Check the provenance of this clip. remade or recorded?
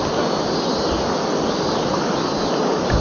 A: recorded